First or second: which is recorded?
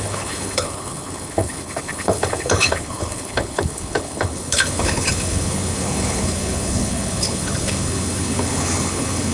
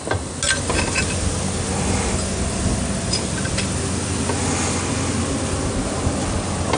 second